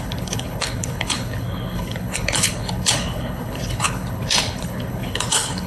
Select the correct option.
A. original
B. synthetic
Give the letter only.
B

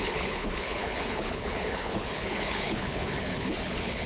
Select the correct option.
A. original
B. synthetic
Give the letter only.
B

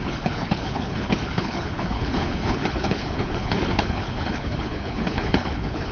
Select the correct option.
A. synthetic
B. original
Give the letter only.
A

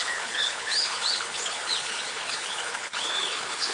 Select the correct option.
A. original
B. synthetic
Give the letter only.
B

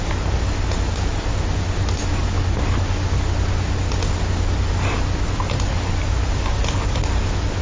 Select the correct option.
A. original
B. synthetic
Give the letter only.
A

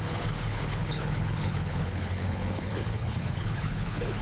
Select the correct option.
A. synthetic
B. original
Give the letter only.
A